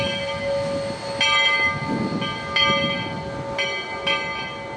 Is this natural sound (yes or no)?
yes